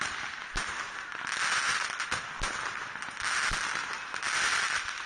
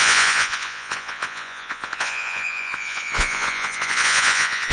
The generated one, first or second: second